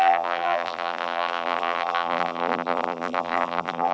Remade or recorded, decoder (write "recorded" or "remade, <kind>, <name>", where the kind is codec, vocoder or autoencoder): remade, vocoder, BigVGAN v2